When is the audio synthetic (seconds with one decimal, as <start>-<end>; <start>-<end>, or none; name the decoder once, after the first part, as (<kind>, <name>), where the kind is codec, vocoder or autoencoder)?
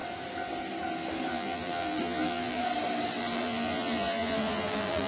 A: 1.3-2.6 (vocoder, BigVGAN v2); 3.2-5.1